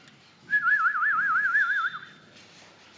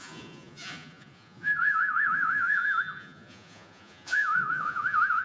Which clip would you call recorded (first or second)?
first